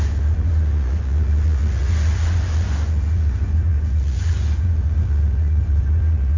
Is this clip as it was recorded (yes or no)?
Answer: no